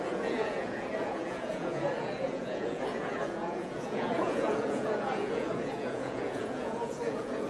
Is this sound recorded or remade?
remade